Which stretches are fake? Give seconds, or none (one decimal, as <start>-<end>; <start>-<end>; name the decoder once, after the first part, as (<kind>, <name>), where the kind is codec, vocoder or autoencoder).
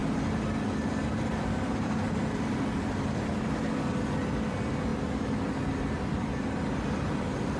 0.0-2.1 (vocoder, BigVGAN v2)